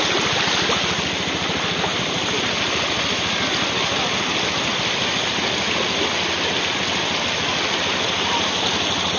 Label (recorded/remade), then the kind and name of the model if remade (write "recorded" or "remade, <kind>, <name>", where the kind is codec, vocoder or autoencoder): recorded